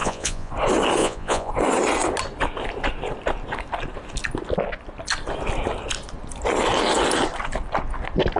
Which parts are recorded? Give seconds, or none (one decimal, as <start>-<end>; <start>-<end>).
0.5-1.0; 1.5-8.4